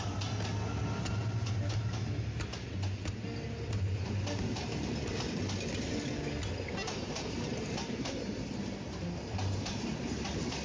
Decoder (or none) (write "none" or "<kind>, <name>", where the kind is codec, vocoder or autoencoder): none